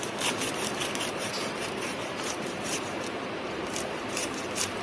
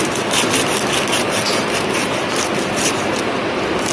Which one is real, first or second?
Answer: second